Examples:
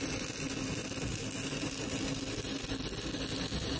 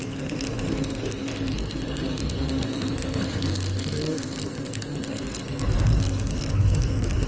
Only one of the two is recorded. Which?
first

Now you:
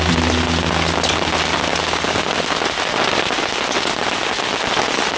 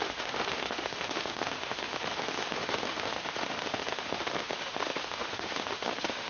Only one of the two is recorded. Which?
first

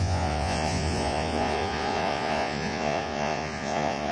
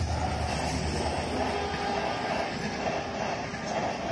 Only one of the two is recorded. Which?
second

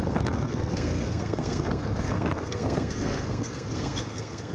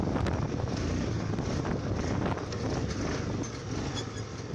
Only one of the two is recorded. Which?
second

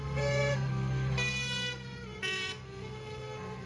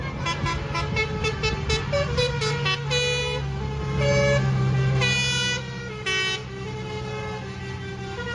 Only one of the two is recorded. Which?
second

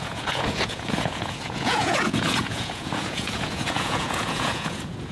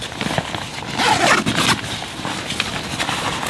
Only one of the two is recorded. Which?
second